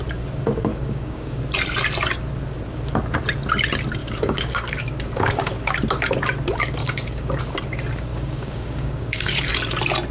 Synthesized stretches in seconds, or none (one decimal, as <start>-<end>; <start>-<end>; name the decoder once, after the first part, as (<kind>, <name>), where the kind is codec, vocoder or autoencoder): 0.7-1.4 (codec, DAC); 4.0-5.7; 6.8-7.4; 8.1-9.5